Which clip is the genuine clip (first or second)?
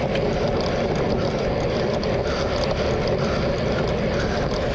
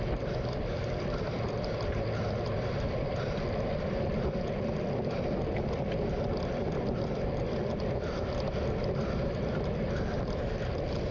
first